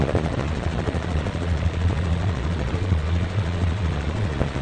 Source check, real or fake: fake